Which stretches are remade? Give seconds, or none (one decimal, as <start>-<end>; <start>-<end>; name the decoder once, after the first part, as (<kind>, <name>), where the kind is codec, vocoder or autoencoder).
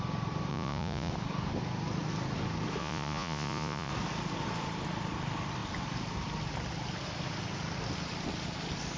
0.5-1.1 (vocoder, Vocos); 2.8-3.9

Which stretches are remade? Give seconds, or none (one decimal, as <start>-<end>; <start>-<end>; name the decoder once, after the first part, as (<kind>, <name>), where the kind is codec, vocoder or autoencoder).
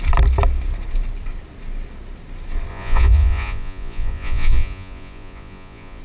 2.7-6.0 (vocoder, Vocos)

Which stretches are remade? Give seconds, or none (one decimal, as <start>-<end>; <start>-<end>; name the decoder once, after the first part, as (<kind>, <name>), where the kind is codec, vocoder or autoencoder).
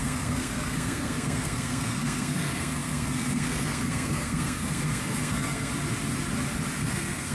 0.0-5.7 (codec, SNAC); 6.8-7.3